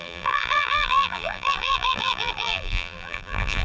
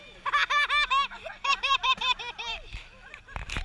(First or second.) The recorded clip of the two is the second